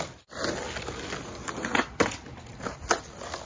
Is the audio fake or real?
real